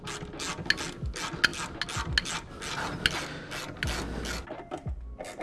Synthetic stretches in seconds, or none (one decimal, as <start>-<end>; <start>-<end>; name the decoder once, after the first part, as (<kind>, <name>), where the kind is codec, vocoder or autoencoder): none